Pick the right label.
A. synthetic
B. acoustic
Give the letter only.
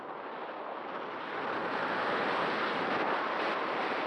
B